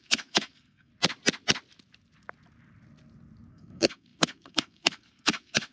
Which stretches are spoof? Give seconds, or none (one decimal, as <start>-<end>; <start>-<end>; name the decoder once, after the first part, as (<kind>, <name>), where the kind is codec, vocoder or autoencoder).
0.0-0.9 (codec, SNAC); 3.5-5.7